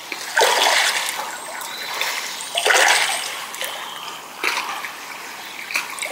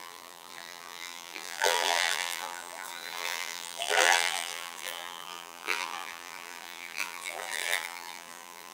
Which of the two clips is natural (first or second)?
first